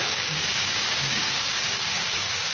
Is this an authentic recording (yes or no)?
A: no